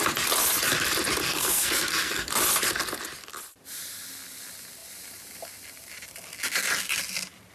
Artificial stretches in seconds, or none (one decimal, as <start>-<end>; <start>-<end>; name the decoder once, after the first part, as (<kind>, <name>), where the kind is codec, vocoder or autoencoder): 1.2-2.3 (codec, SNAC)